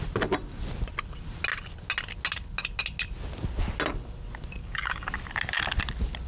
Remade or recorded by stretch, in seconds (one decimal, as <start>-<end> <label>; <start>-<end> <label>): 0.0-4.6 recorded; 4.6-5.1 remade; 5.1-6.3 recorded